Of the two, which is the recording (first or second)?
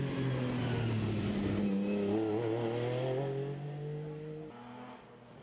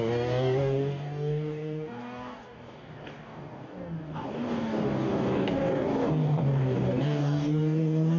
first